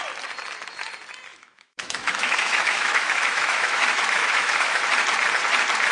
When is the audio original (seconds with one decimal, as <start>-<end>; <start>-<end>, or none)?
0.0-1.3; 4.8-5.9